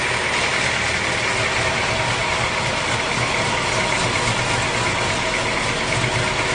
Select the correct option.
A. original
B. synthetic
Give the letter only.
A